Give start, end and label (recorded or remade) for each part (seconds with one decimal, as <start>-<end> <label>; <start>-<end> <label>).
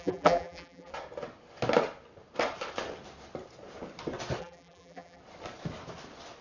0.0-0.9 remade; 0.9-4.4 recorded; 4.4-5.2 remade; 5.2-6.4 recorded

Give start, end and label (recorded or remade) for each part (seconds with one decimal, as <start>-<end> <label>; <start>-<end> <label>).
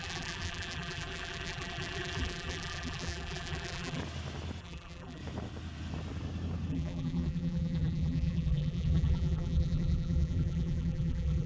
0.0-4.0 remade; 4.0-4.6 recorded; 4.6-5.2 remade; 5.2-6.7 recorded; 6.7-11.5 remade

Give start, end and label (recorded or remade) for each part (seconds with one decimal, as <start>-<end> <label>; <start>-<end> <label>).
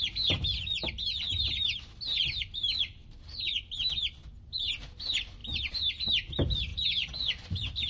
0.0-5.4 recorded; 5.4-5.9 remade; 5.9-7.9 recorded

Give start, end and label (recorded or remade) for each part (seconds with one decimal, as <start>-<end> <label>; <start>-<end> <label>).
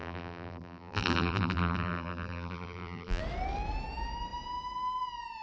0.0-3.2 remade; 3.2-5.4 recorded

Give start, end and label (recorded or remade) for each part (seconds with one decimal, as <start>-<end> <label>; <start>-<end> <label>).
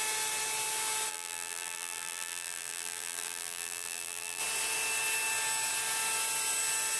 0.0-1.1 recorded; 1.1-4.4 remade; 4.4-7.0 recorded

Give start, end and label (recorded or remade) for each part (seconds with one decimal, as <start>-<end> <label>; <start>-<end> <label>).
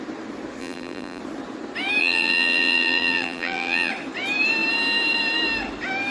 0.0-0.6 recorded; 0.6-1.2 remade; 1.2-2.0 recorded; 2.0-3.9 remade; 3.9-6.1 recorded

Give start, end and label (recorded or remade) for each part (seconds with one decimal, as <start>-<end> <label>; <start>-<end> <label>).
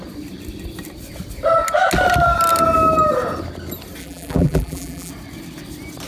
0.0-4.0 recorded; 4.0-5.1 remade; 5.1-6.1 recorded